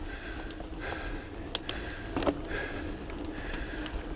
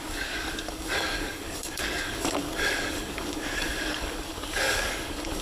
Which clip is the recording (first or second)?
first